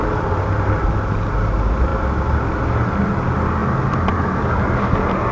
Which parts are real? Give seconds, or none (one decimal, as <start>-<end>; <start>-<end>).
0.0-5.3

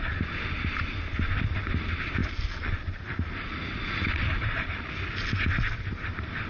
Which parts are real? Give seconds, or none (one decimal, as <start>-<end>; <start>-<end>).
0.0-2.2; 4.9-6.5

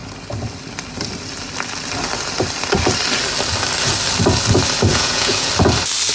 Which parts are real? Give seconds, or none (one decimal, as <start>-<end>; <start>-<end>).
0.0-4.9; 5.5-6.1

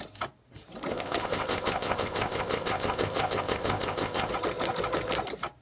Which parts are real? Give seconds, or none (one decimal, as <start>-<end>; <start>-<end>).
0.0-0.9; 4.3-5.6